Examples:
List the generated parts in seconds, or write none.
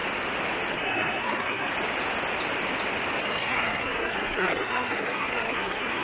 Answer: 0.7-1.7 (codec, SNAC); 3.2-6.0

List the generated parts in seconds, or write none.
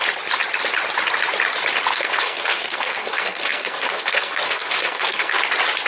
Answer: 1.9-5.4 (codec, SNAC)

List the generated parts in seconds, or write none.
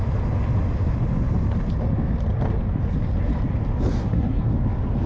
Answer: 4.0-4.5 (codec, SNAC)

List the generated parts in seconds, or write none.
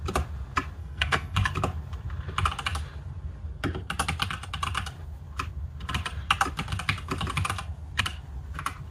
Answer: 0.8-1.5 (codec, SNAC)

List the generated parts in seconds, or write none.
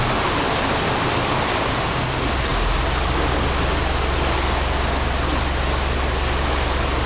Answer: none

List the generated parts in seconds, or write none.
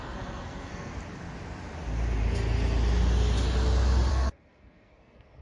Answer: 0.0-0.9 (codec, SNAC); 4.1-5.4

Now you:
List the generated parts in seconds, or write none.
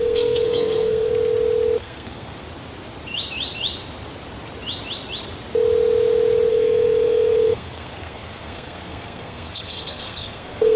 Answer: 0.0-1.1 (codec, SNAC); 1.8-2.4; 6.5-10.8